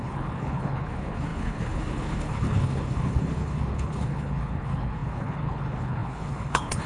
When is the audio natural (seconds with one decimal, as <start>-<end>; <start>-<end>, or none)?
none